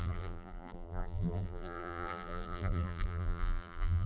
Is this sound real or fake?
fake